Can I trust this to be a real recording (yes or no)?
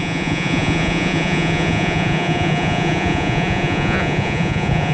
no